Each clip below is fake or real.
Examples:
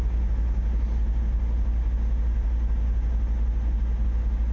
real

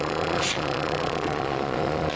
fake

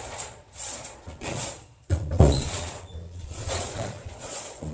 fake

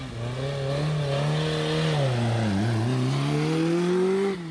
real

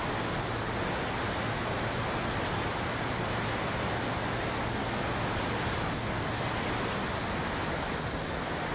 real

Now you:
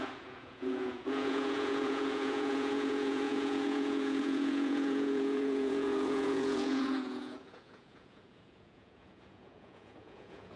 fake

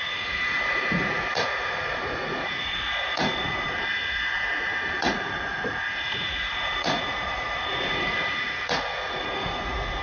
fake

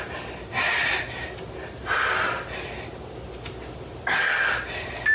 real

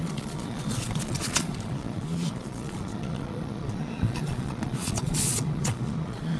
fake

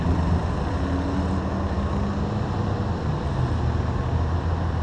real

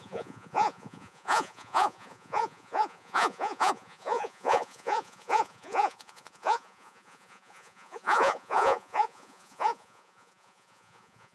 fake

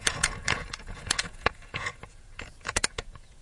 fake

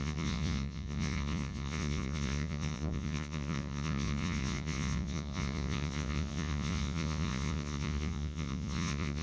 fake